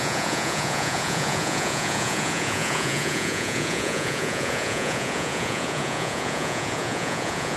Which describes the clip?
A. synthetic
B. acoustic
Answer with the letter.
A